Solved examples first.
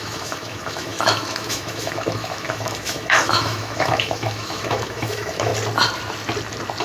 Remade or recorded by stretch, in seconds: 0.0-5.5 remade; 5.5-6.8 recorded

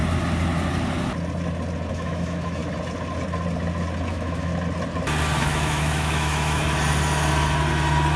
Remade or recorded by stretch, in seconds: 0.0-1.9 recorded; 1.9-2.6 remade; 2.6-4.1 recorded; 4.1-4.5 remade; 4.5-5.4 recorded; 5.4-6.6 remade; 6.6-8.2 recorded

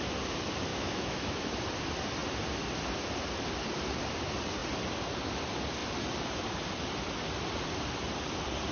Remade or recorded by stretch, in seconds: 0.0-0.7 recorded; 0.7-1.5 remade; 1.5-8.7 recorded

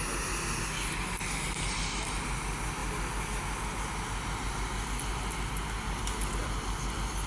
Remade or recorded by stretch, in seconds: 0.0-7.3 recorded

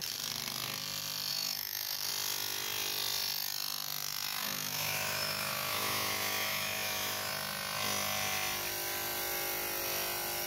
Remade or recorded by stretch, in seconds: 0.0-1.3 recorded; 1.3-2.1 remade; 2.1-4.4 recorded; 4.4-7.3 remade; 7.3-10.5 recorded

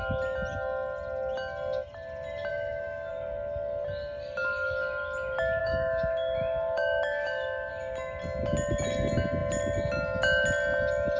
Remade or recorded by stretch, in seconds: 0.0-2.5 recorded; 2.5-3.1 remade; 3.1-5.6 recorded; 5.6-7.7 remade; 7.7-11.2 recorded